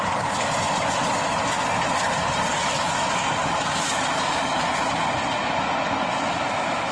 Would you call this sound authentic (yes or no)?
yes